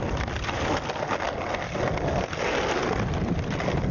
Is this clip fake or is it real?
real